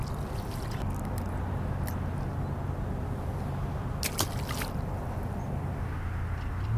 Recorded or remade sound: recorded